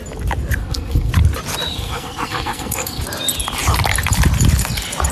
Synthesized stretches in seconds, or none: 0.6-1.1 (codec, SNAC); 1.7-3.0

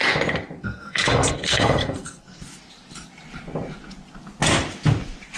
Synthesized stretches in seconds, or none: 0.6-2.4 (codec, SNAC)

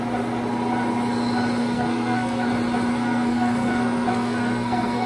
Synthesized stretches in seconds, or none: 1.6-2.5 (codec, SNAC); 2.9-5.1